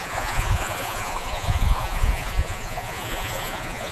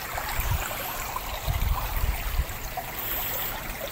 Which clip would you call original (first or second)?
second